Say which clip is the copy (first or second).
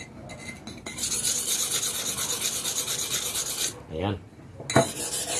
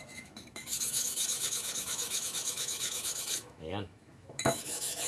second